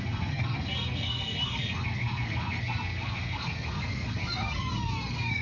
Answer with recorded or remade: remade